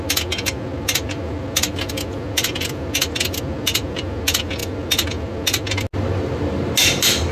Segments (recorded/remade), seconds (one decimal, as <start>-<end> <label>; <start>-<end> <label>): 0.0-7.3 recorded